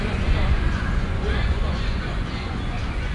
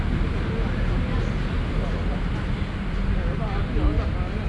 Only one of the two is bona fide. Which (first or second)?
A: second